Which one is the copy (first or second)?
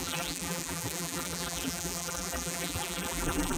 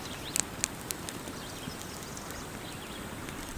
first